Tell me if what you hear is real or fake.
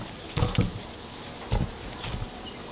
real